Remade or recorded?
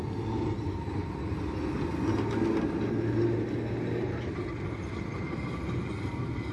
recorded